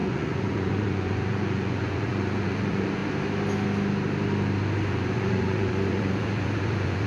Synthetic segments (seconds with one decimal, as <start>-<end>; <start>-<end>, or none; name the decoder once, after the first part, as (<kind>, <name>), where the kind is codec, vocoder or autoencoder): 0.0-3.0 (vocoder, Vocos); 4.9-7.1